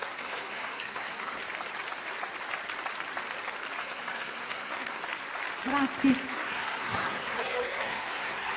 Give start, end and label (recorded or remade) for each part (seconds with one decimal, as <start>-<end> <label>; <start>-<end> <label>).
0.0-1.4 remade; 1.4-3.8 recorded; 3.8-5.0 remade; 5.0-6.3 recorded; 6.3-8.6 remade